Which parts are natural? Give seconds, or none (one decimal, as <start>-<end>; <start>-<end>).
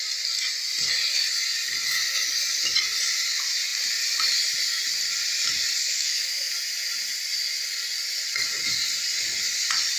0.0-5.8; 6.5-10.0